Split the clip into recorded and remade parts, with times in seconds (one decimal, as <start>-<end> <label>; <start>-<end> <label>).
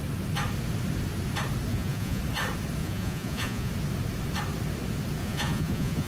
0.0-1.7 recorded; 1.7-2.2 remade; 2.2-2.8 recorded; 2.8-3.7 remade; 3.7-5.2 recorded; 5.2-6.1 remade